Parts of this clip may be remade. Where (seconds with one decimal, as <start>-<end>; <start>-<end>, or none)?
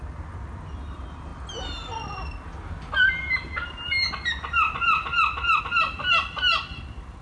none